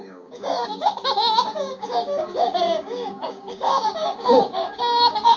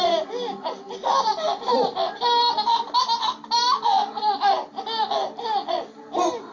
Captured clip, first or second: second